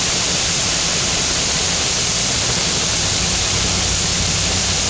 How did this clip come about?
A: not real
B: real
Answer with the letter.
A